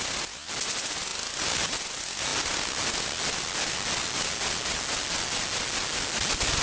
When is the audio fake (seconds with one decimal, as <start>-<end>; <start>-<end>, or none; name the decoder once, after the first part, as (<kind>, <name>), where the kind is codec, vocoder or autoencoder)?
none